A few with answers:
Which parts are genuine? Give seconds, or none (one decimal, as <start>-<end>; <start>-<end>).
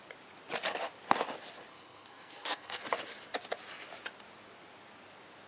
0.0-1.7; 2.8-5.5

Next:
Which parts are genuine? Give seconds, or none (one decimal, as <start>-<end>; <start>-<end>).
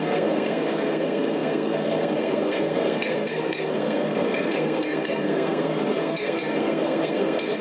none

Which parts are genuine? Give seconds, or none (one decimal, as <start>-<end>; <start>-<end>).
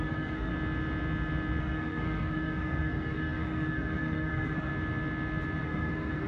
0.5-1.6; 4.7-5.6